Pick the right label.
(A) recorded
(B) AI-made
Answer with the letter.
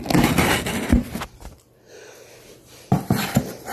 A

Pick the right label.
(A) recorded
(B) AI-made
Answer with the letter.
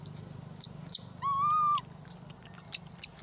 A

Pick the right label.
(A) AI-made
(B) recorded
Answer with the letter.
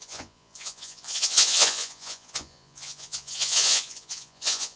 A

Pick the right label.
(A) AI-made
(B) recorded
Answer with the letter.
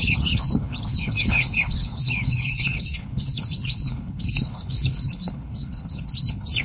A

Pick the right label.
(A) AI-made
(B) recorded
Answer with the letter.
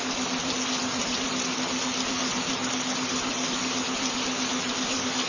A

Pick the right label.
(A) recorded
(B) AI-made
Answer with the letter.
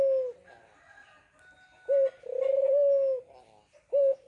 A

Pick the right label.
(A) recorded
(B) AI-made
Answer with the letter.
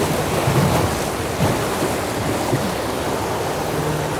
A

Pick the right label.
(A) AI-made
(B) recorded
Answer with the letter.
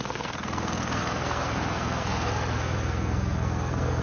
A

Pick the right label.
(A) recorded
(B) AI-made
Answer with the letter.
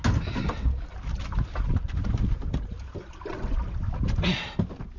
A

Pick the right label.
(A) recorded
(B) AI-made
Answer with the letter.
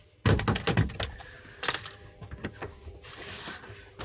A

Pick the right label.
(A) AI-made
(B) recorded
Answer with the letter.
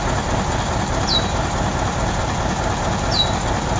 B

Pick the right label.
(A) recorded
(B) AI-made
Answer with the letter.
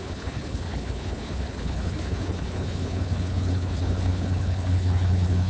B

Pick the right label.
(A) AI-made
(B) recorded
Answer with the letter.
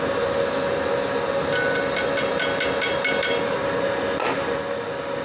B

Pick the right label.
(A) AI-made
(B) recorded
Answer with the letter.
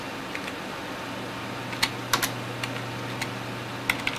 B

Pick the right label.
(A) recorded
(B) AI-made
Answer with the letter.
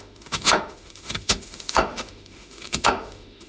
B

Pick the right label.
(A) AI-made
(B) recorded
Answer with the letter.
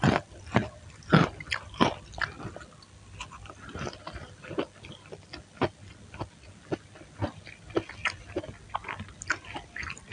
A